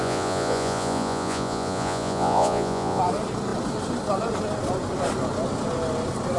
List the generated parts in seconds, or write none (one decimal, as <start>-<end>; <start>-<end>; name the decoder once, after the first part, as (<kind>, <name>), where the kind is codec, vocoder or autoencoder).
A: 0.0-3.0 (vocoder, Vocos)